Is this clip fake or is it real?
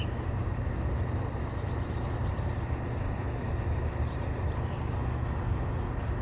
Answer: real